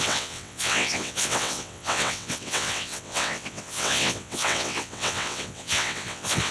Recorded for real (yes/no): no